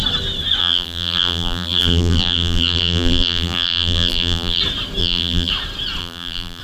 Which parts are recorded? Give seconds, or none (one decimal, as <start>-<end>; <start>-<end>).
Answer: 0.0-0.6; 4.6-5.0; 5.5-6.0